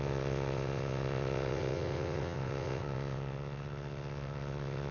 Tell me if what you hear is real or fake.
fake